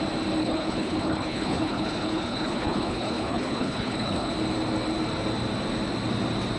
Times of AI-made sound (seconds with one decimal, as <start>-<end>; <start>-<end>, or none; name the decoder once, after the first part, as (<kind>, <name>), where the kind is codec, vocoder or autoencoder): 0.4-4.3 (codec, HILCodec)